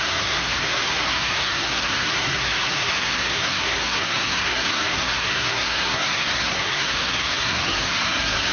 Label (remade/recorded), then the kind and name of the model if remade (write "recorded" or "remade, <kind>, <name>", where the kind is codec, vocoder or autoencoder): remade, codec, SNAC